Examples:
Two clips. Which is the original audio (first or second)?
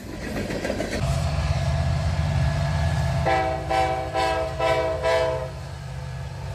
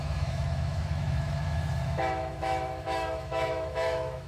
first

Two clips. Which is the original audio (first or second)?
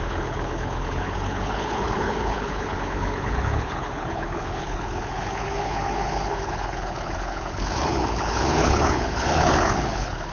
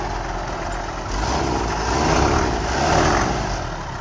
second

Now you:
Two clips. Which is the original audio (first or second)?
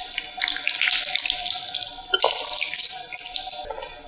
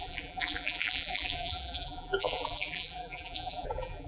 first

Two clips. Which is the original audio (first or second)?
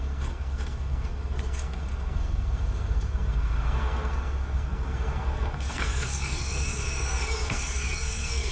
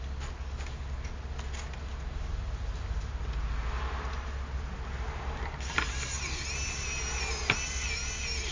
second